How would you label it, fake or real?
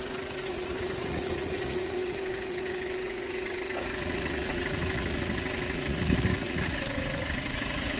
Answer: fake